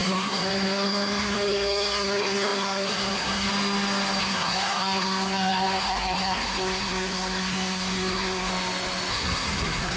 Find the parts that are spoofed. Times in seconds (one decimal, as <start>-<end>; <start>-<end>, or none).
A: 0.0-3.5; 4.2-8.5; 9.1-10.0